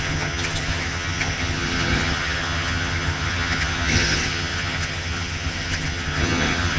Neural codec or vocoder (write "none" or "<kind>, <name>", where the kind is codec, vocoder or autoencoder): vocoder, HiFi-GAN